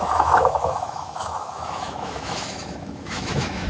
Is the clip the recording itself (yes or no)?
no